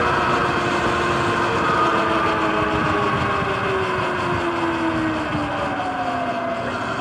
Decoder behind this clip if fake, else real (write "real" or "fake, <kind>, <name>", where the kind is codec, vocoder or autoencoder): real